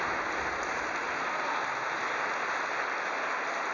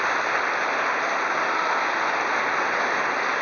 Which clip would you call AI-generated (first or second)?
second